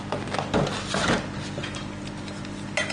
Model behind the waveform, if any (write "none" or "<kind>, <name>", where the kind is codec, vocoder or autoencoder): none